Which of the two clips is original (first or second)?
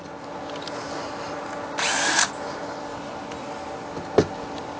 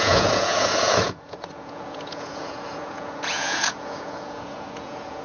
first